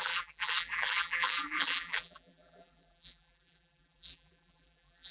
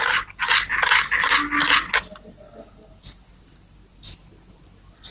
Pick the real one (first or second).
second